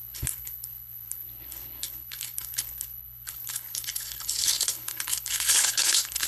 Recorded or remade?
remade